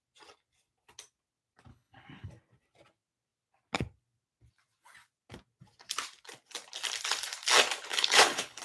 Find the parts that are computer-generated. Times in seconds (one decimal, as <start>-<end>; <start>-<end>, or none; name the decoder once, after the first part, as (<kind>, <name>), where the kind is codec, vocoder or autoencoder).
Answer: 1.7-2.3 (codec, HILCodec); 7.9-8.6